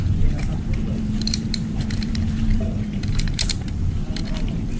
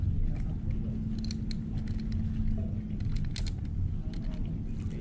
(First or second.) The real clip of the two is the second